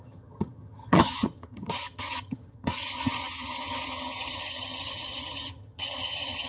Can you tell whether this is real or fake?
fake